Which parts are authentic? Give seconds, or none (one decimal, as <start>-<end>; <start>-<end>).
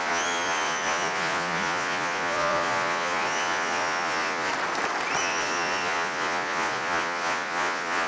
4.5-5.2